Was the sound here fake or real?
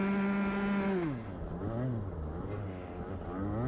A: real